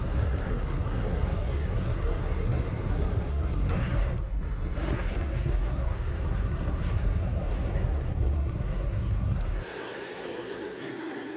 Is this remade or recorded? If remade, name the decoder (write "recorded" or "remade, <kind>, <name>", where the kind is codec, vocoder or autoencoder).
remade, codec, SNAC